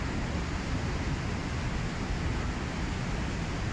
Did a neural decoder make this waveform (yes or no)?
no